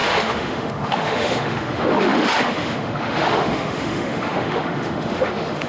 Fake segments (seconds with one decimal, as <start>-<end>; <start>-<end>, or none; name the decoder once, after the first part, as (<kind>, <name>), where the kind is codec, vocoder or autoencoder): 0.0-5.7 (autoencoder, DAC-VAE)